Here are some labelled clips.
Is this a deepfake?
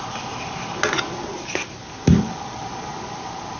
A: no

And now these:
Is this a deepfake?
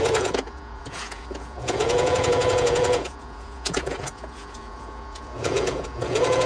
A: yes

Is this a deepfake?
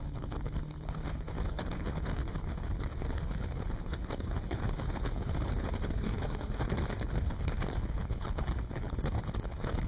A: yes